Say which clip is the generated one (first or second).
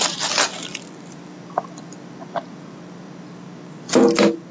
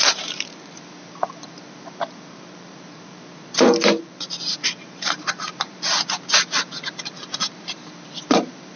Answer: second